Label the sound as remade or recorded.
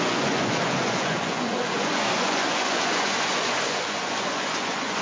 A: remade